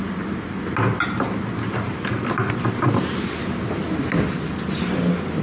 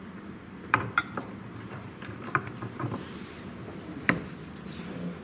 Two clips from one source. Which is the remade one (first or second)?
second